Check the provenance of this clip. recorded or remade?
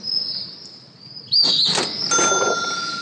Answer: recorded